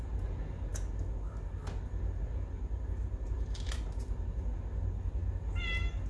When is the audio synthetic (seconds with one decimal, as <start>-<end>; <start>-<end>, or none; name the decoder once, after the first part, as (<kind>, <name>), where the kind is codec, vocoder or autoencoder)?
none